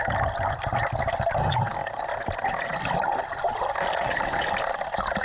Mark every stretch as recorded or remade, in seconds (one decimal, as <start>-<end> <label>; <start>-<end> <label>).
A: 0.0-5.2 recorded